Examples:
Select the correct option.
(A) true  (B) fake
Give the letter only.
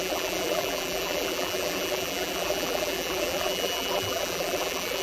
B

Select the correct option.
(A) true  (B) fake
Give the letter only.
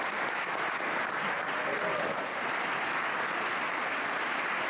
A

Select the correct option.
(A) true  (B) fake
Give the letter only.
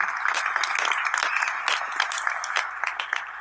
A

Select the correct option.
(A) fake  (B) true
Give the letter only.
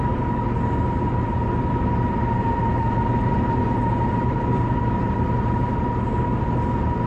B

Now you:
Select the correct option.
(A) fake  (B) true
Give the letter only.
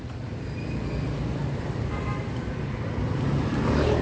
B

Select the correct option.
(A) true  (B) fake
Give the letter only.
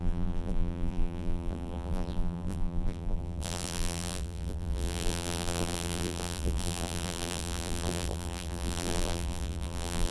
B